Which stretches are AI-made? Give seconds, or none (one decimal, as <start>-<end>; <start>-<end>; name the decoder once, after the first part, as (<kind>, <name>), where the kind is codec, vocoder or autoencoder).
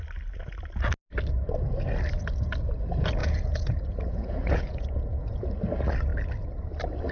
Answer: 3.2-5.5 (vocoder, Vocos)